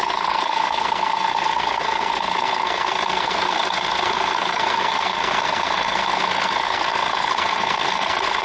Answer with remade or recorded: remade